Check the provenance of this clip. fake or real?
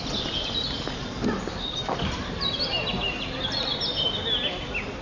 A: real